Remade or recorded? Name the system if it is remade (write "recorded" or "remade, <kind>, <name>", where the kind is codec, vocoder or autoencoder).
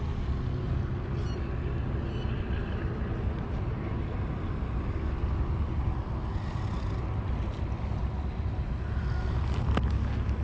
recorded